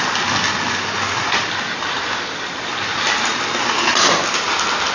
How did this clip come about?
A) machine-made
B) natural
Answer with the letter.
B